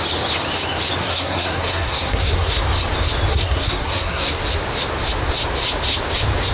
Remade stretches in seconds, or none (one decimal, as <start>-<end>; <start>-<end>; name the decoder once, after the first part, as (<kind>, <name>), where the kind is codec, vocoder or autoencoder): 1.0-2.6 (codec, SNAC); 3.3-4.4